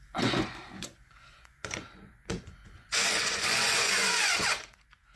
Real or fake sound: fake